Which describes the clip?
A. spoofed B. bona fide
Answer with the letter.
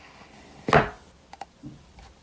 B